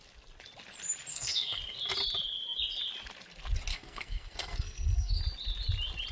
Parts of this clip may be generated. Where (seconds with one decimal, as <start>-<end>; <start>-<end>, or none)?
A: 1.1-1.6; 3.7-5.2